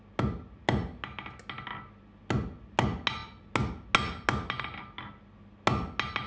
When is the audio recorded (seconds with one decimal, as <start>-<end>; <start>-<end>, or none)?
0.0-6.3